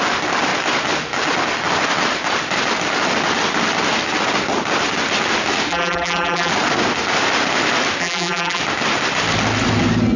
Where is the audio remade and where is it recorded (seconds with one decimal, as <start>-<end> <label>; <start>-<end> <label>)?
0.0-5.7 recorded; 5.7-6.5 remade; 6.5-8.0 recorded; 8.0-8.6 remade; 8.6-10.2 recorded